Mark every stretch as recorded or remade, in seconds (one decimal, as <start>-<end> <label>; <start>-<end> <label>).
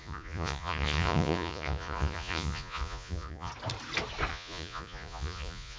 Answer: 0.0-3.5 remade; 3.5-4.3 recorded; 4.3-5.8 remade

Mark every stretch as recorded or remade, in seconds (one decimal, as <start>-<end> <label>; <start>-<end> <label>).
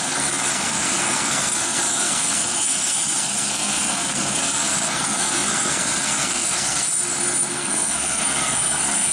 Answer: 0.0-6.9 remade; 6.9-7.5 recorded; 7.5-9.1 remade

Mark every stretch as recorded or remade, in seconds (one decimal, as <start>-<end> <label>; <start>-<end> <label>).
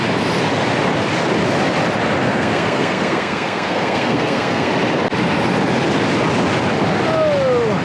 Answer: 0.0-2.2 recorded; 2.2-4.7 remade; 4.7-7.8 recorded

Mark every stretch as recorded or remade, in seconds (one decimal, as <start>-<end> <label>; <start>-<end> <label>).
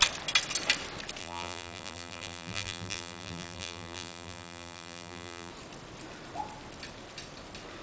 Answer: 0.0-1.2 recorded; 1.2-5.5 remade; 5.5-7.8 recorded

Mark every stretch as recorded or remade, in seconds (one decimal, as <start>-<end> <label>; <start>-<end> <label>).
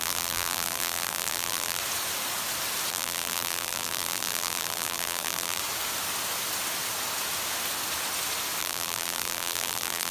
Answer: 0.0-1.8 remade; 1.8-2.9 recorded; 2.9-5.6 remade; 5.6-8.6 recorded; 8.6-10.1 remade